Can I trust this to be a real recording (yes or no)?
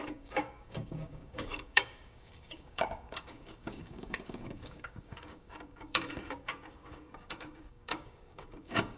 no